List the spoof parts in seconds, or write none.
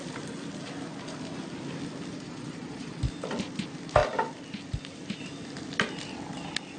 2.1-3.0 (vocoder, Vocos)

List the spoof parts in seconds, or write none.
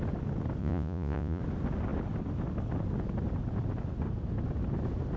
0.6-1.4 (vocoder, Vocos)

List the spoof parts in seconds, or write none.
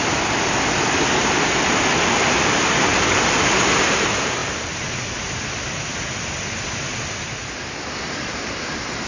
none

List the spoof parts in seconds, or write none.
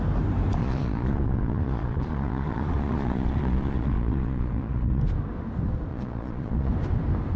0.6-5.0 (vocoder, Vocos); 5.9-6.7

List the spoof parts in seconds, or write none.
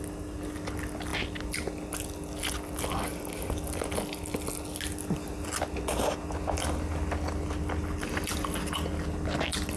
none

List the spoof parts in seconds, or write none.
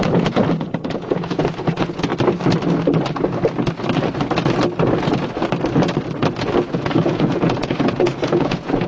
0.0-2.1 (vocoder, Vocos); 6.7-8.9